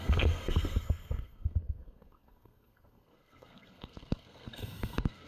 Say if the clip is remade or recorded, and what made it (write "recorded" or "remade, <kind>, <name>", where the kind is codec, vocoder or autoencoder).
remade, codec, SNAC